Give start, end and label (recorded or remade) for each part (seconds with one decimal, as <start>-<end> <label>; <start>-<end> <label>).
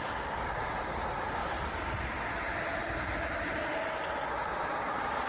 0.0-5.3 recorded